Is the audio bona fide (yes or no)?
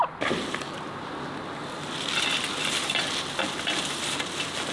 yes